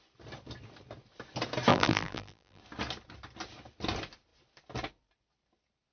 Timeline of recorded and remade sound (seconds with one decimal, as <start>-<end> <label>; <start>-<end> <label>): 0.0-1.7 recorded; 1.7-2.6 remade; 2.6-5.9 recorded

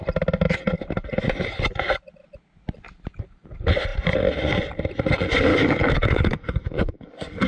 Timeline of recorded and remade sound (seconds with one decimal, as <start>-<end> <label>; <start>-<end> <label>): 0.0-5.5 recorded; 5.5-7.5 remade

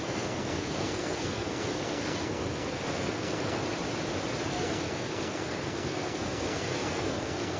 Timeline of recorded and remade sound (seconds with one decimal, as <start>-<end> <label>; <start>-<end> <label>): 0.0-3.6 remade; 3.6-4.5 recorded; 4.5-7.6 remade

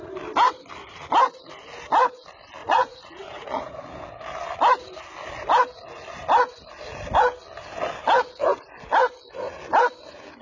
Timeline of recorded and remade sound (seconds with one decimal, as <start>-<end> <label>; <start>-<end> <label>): 0.0-2.6 recorded; 2.6-3.7 remade; 3.7-10.4 recorded

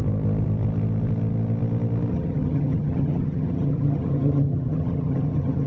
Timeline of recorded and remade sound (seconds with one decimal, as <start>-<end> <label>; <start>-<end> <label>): 0.0-2.1 recorded; 2.1-5.7 remade

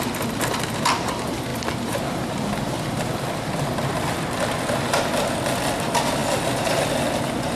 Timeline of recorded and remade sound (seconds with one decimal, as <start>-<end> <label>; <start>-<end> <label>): 0.0-1.5 recorded; 1.5-5.3 remade; 5.3-7.6 recorded

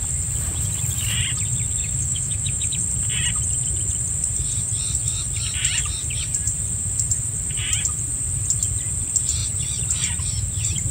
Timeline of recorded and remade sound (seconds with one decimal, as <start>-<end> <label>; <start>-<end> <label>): 0.0-1.8 recorded; 1.8-2.7 remade; 2.7-10.9 recorded